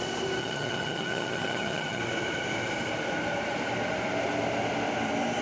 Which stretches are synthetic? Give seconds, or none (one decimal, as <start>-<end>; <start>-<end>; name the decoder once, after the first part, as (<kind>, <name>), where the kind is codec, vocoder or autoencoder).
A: 0.4-2.0 (vocoder, HiFi-GAN)